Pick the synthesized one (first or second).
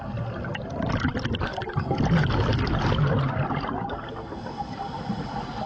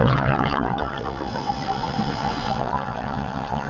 second